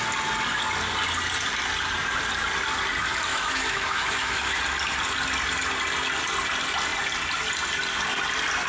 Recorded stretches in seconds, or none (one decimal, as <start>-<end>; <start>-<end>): 0.0-3.3; 4.6-8.7